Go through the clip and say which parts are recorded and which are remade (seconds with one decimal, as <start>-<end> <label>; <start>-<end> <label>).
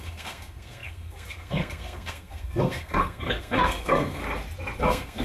0.0-4.2 remade; 4.2-4.8 recorded; 4.8-5.2 remade